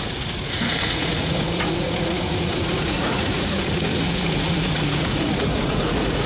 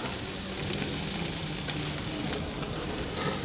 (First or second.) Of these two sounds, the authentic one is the second